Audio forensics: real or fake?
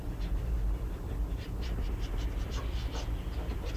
real